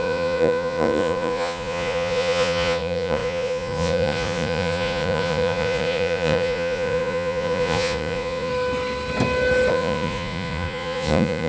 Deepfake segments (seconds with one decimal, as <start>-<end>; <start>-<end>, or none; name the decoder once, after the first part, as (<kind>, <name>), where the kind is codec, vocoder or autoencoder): 0.0-8.5 (vocoder, Vocos); 9.7-11.5